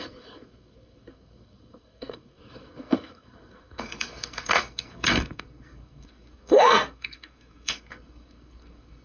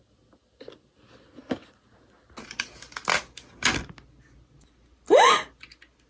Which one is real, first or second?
second